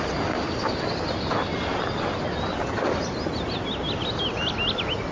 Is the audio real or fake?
real